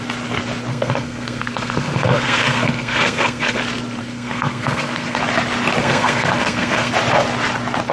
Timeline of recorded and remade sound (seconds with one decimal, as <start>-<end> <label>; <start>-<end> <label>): 0.0-0.7 recorded; 0.7-3.6 remade; 3.6-4.0 recorded; 4.0-5.2 remade; 5.2-5.8 recorded; 5.8-6.9 remade; 6.9-7.9 recorded